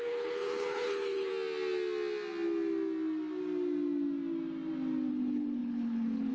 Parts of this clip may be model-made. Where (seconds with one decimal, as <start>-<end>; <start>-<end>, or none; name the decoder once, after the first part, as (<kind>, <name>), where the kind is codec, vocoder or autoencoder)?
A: 0.0-1.3 (codec, HILCodec); 5.1-6.3